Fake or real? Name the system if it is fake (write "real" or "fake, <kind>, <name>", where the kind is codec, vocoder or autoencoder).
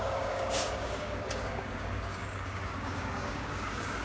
fake, codec, DAC